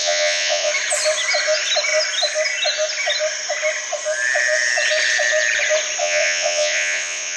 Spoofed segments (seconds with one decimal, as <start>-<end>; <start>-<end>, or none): 0.0-0.7; 6.0-7.4